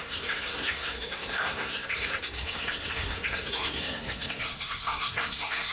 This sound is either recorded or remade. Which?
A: remade